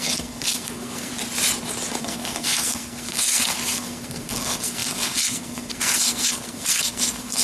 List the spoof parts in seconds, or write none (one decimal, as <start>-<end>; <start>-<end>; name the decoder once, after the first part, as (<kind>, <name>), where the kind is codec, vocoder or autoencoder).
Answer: 0.0-1.1 (codec, SNAC); 1.9-7.4